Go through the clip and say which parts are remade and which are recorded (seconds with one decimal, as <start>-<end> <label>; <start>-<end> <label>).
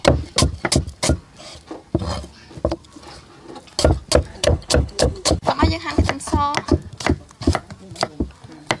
0.0-4.3 recorded; 4.3-5.6 remade; 5.6-8.8 recorded